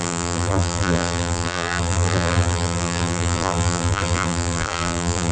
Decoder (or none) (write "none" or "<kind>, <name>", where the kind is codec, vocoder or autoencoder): vocoder, BigVGAN v2